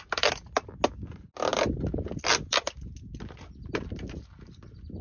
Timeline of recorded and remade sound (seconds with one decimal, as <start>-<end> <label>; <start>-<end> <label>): 0.0-5.0 recorded